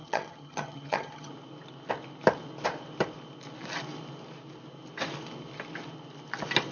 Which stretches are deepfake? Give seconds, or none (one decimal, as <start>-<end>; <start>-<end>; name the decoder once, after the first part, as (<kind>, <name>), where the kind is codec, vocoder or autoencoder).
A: 0.0-1.3 (vocoder, HiFi-GAN)